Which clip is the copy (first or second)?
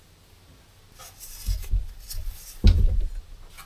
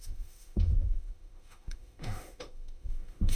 second